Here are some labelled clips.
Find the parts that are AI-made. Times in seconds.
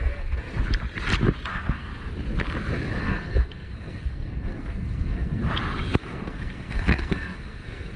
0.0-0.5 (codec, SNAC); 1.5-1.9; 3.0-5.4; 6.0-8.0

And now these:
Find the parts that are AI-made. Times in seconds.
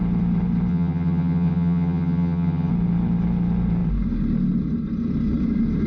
0.7-2.7 (vocoder, HiFi-GAN)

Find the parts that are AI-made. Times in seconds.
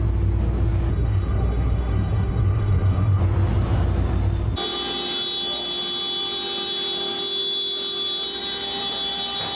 0.9-3.2 (codec, SNAC)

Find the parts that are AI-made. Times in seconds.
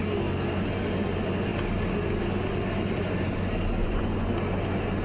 3.8-4.3 (vocoder, Vocos)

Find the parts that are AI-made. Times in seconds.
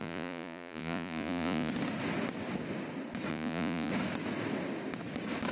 0.0-1.7 (vocoder, Vocos); 3.3-3.9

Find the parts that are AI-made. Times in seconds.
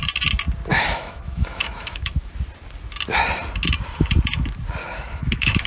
0.7-2.3 (autoencoder, DAC-VAE); 4.8-5.7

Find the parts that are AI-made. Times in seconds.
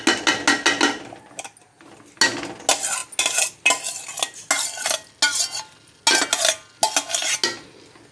none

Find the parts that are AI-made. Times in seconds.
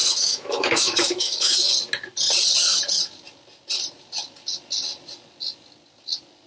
0.0-1.7 (autoencoder, DAC-VAE)